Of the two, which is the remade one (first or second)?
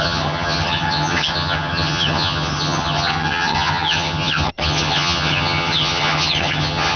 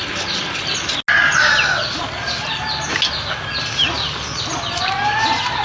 first